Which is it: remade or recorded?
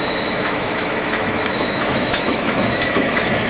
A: remade